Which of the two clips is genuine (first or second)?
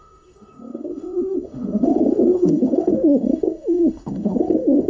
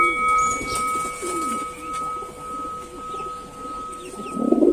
second